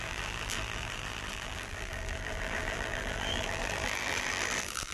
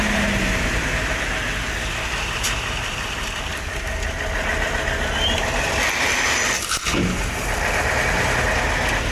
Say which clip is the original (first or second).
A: second